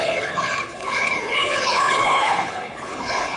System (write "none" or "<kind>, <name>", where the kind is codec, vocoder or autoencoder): codec, HILCodec